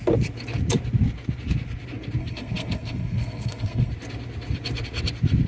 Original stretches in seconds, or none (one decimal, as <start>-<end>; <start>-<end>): 0.0-2.2; 3.9-5.5

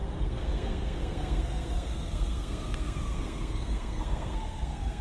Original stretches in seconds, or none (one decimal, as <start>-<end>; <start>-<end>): none